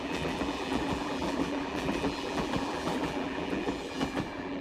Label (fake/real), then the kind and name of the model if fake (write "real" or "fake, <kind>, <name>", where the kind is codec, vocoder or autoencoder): fake, vocoder, BigVGAN v2